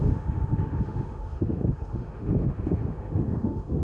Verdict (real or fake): fake